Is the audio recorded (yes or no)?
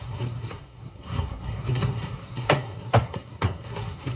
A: no